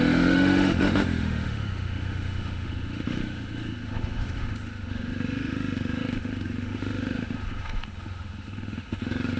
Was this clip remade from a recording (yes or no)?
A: yes